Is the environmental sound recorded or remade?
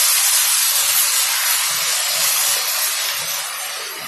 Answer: recorded